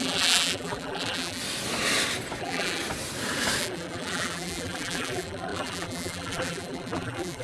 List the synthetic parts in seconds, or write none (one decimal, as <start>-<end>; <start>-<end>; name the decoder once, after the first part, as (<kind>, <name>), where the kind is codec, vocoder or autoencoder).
0.0-1.4 (vocoder, BigVGAN v2); 2.4-2.8; 3.6-7.4